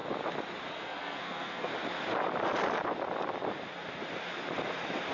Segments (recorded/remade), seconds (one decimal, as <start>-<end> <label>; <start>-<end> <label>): 0.0-0.7 recorded; 0.7-1.7 remade; 1.7-5.1 recorded